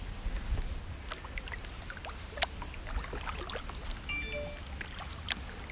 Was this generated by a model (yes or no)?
no